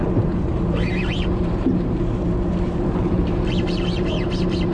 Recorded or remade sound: remade